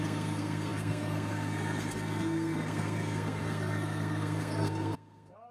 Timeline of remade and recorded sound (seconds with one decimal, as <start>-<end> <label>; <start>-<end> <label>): 0.0-5.5 remade